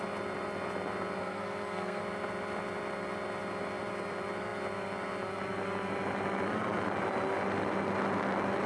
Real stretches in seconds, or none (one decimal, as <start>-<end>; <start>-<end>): 0.0-1.2; 2.0-8.7